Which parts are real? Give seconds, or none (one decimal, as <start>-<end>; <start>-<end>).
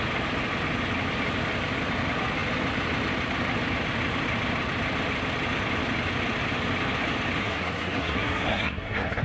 0.0-7.4